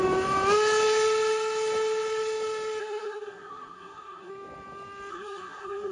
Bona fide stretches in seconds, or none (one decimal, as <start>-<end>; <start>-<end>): 0.0-2.8; 4.3-5.1